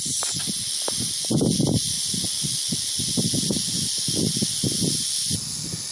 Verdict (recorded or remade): recorded